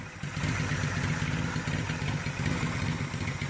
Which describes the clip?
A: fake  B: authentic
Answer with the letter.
B